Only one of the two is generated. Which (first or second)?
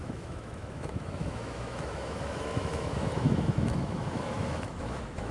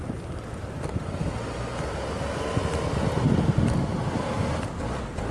first